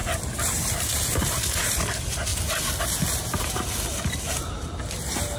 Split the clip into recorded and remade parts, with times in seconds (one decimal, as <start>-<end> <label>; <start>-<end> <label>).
0.0-2.3 remade; 2.3-5.4 recorded